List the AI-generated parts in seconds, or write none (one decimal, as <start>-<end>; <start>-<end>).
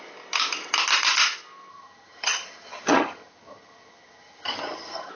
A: 1.7-5.1